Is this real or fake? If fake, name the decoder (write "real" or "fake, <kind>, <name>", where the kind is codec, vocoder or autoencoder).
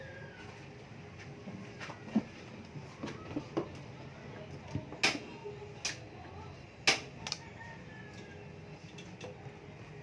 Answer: real